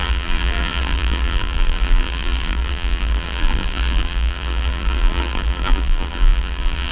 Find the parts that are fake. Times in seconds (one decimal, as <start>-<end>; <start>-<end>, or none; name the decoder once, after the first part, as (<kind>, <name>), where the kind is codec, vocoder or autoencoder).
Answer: 0.0-6.9 (vocoder, BigVGAN v2)